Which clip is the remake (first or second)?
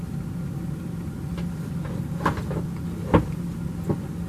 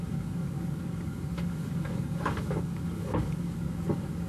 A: second